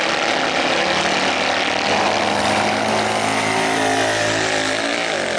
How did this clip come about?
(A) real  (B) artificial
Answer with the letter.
A